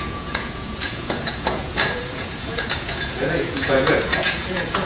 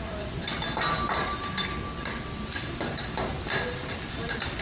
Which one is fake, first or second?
first